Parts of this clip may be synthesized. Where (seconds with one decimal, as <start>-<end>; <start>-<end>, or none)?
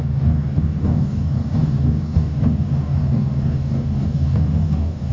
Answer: 0.0-5.1